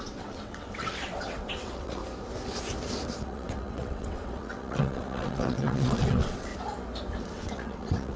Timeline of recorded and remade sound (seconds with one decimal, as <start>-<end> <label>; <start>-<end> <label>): 0.0-2.0 remade; 2.0-3.2 recorded; 3.2-6.5 remade; 6.5-7.2 recorded; 7.2-8.2 remade